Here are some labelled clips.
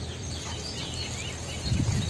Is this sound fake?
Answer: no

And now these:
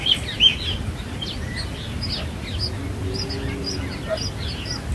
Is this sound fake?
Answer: no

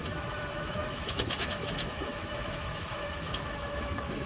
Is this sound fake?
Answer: yes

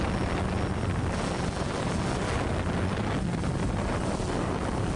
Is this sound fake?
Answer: no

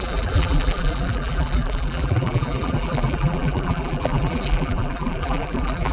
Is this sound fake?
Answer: yes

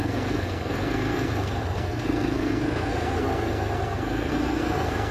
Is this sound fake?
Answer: yes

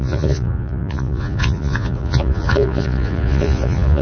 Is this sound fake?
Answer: yes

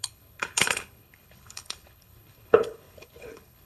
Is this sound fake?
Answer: yes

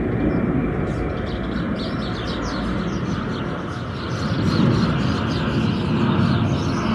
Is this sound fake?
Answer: no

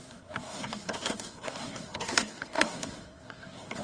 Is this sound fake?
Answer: yes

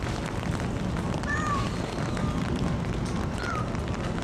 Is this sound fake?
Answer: no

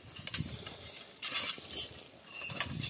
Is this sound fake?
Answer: no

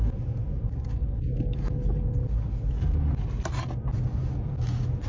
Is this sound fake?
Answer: no